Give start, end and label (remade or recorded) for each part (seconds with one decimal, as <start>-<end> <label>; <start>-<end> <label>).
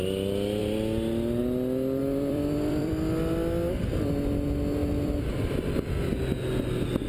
0.0-2.0 recorded; 2.0-2.9 remade; 2.9-4.8 recorded; 4.8-6.2 remade; 6.2-7.1 recorded